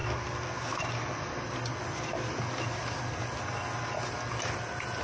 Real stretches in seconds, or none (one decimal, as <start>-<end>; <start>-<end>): 0.0-5.0